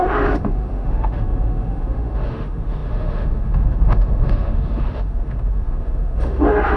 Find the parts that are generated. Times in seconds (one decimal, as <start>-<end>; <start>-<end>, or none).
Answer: 0.0-6.8